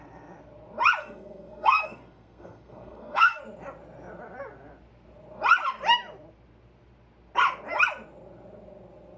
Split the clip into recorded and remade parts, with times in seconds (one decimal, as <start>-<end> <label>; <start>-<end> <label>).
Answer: 0.0-1.0 recorded; 1.0-3.4 remade; 3.4-9.2 recorded